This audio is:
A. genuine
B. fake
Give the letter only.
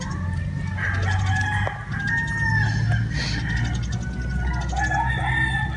A